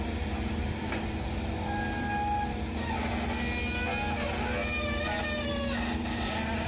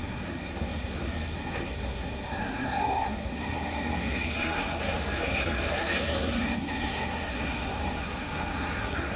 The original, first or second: first